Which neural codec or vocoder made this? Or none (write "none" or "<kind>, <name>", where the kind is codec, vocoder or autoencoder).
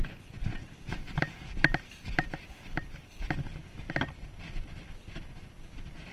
none